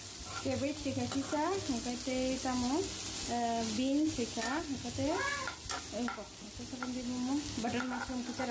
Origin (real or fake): real